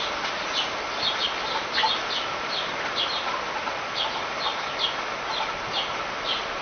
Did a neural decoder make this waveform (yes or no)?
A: no